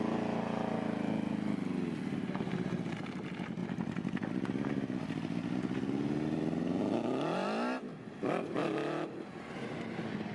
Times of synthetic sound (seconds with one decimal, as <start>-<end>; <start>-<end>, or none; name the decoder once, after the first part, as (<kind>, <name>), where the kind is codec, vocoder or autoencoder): 8.6-9.3 (vocoder, BigVGAN v2)